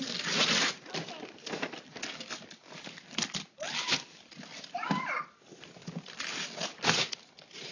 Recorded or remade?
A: recorded